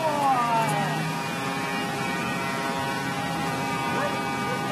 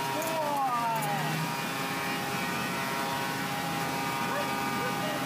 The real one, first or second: first